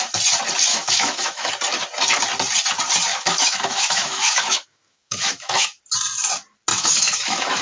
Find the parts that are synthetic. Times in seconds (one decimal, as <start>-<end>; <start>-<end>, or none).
0.7-1.5; 3.1-5.8; 6.7-7.6